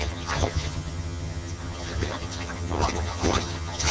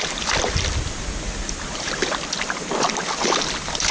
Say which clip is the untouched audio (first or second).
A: second